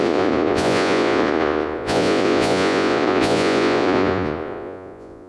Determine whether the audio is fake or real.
fake